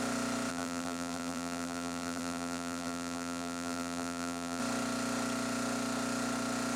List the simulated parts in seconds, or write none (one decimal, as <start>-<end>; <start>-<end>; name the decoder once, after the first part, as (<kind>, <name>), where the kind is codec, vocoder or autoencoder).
0.5-4.6 (vocoder, BigVGAN v2)